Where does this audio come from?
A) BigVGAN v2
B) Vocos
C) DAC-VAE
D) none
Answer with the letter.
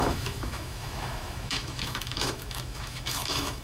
C